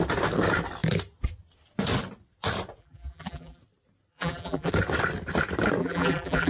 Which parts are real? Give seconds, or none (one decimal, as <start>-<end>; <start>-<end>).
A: 0.0-2.8; 3.6-4.1; 4.7-5.8